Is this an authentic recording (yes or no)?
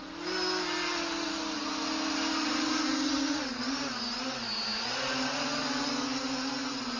yes